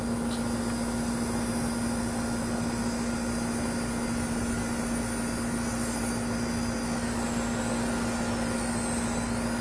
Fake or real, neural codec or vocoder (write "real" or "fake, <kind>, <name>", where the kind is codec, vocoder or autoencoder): real